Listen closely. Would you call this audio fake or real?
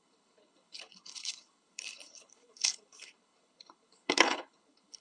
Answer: fake